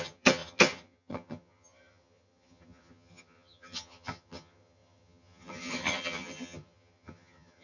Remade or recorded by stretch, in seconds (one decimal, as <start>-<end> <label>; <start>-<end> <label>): 0.0-7.6 remade